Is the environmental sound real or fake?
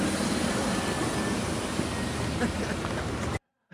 real